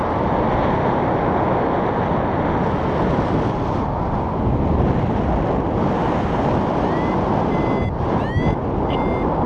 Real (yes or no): yes